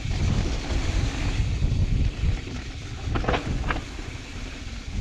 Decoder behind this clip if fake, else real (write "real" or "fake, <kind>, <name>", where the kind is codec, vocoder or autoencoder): real